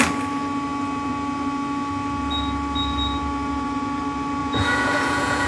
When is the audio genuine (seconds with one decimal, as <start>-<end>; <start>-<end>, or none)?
0.0-4.4